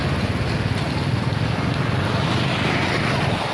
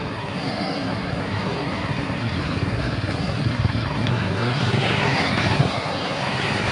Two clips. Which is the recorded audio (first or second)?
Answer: first